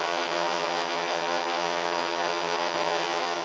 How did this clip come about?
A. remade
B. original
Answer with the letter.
A